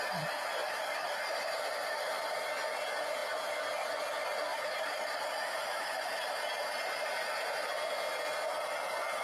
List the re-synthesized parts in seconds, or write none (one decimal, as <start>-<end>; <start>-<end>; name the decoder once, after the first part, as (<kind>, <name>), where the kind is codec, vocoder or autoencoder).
0.6-2.2 (vocoder, BigVGAN v2); 4.5-5.2